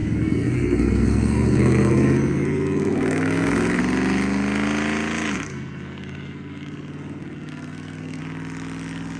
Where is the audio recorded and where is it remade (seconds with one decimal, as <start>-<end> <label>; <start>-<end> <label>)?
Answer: 0.0-3.8 remade; 3.8-5.5 recorded; 5.5-8.2 remade; 8.2-9.2 recorded